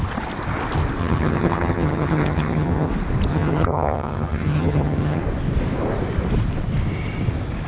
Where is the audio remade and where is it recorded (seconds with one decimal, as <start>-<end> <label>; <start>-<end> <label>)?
0.0-1.0 recorded; 1.0-2.9 remade; 2.9-3.3 recorded; 3.3-5.2 remade; 5.2-7.7 recorded